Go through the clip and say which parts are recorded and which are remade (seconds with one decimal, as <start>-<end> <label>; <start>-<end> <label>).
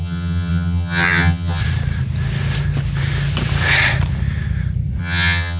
0.0-1.6 remade; 1.6-5.0 recorded; 5.0-5.6 remade